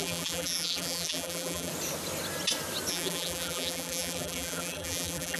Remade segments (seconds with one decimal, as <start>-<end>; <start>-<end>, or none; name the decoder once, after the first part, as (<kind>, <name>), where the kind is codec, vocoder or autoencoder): 0.0-1.7 (vocoder, BigVGAN v2); 2.9-5.4